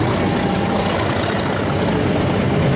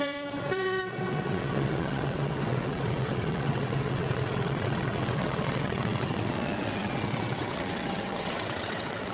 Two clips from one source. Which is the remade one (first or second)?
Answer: second